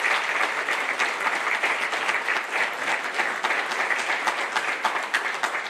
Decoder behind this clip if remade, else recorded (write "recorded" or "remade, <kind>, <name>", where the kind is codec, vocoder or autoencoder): recorded